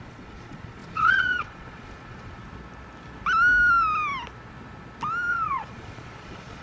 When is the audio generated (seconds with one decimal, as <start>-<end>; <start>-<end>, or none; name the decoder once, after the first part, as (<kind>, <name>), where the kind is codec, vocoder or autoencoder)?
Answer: 0.0-2.4 (vocoder, Vocos); 5.3-6.6